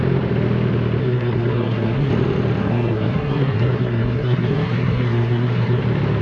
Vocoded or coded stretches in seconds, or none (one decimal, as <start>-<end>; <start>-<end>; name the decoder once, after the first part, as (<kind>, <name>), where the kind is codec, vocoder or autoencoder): 1.0-2.1 (codec, SNAC); 2.6-5.8